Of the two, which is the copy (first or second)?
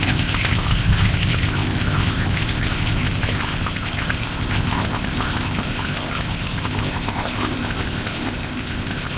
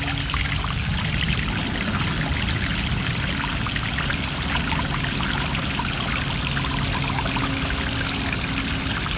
first